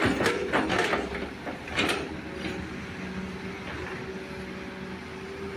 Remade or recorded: recorded